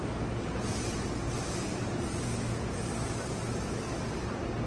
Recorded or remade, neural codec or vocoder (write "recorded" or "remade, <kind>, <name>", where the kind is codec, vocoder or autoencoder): recorded